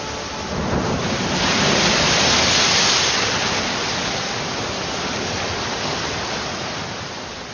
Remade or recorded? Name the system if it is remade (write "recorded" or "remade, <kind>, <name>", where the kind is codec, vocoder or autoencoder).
recorded